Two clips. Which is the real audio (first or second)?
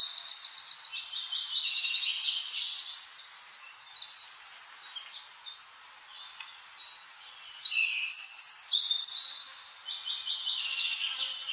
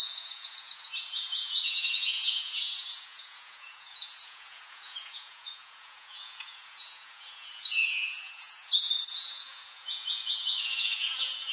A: first